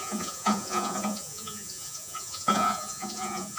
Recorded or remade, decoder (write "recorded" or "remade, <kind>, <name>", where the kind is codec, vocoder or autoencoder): remade, vocoder, Vocos